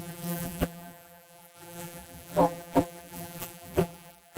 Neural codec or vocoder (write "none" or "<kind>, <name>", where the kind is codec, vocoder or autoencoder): vocoder, BigVGAN v2